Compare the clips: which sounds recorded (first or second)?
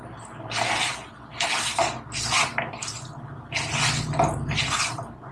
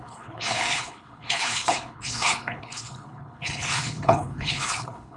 first